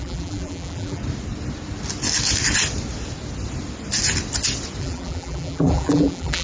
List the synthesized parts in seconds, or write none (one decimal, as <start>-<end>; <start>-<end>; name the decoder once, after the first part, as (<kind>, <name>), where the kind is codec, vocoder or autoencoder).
0.0-1.0 (vocoder, BigVGAN v2); 4.8-6.4